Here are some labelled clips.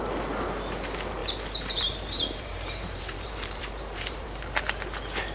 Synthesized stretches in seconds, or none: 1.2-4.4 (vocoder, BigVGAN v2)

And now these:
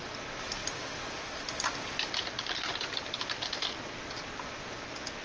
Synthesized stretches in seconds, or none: 0.6-3.7 (vocoder, BigVGAN v2)

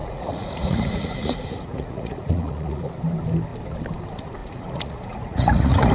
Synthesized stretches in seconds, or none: 0.0-2.9 (vocoder, Vocos); 4.4-5.9

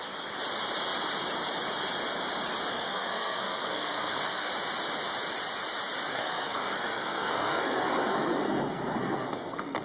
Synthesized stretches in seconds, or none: 2.7-4.5 (codec, SNAC); 6.1-9.8

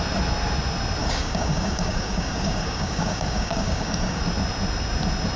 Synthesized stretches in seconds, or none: 1.0-4.2 (codec, DAC)

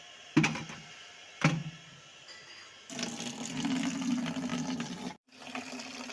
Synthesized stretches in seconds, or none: none

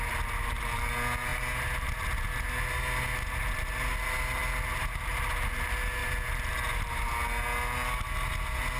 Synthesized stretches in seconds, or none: none